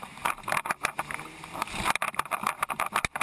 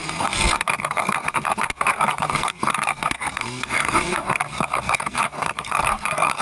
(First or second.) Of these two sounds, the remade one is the second